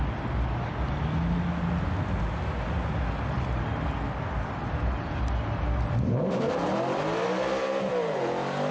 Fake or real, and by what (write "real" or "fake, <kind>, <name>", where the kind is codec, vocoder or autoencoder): real